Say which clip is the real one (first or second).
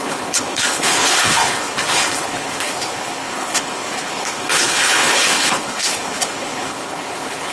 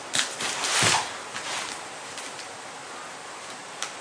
second